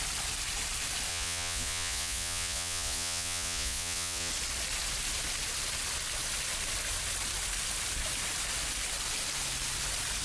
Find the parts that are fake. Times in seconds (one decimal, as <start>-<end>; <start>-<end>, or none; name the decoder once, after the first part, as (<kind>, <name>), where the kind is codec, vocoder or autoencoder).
1.1-4.3 (vocoder, Vocos)